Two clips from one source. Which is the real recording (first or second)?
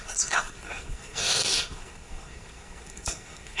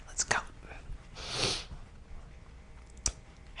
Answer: second